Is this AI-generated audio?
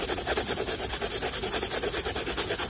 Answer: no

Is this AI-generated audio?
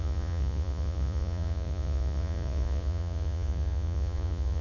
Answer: yes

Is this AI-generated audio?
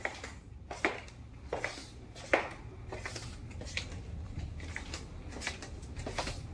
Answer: no